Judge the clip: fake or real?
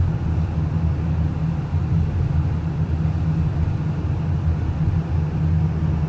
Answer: real